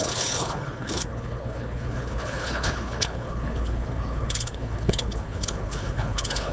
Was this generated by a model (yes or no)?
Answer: yes